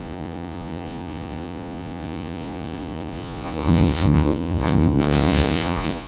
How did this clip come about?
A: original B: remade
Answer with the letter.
B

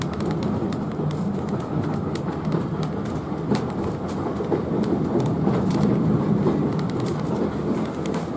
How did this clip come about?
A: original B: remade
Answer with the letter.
A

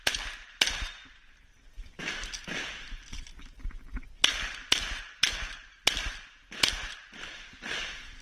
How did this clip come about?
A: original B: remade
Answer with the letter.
A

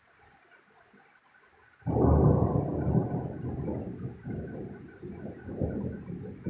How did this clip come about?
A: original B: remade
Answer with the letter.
A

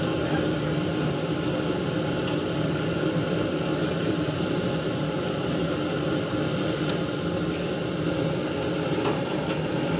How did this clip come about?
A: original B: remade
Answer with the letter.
A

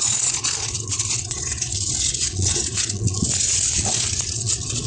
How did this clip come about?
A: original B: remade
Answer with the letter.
B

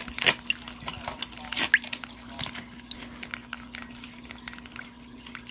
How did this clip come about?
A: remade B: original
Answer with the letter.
B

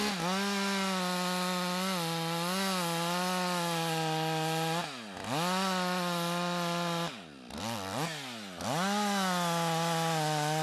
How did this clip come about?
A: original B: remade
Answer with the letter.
A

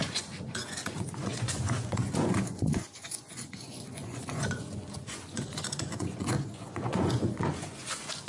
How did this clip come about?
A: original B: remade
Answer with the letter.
B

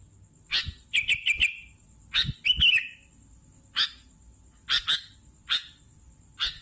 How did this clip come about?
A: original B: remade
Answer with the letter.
A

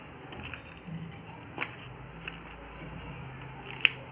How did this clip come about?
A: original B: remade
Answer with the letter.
A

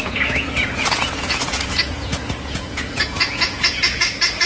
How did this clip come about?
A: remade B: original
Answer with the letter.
A